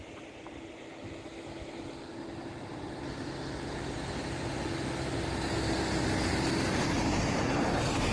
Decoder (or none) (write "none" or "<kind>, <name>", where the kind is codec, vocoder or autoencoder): none